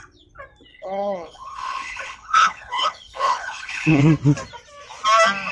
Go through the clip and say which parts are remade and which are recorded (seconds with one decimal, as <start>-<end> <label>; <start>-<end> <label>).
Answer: 0.0-0.7 recorded; 0.7-4.0 remade; 4.0-5.5 recorded